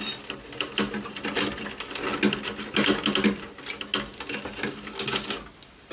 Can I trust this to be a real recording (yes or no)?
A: yes